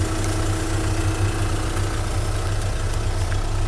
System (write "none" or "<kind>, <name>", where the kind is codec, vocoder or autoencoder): none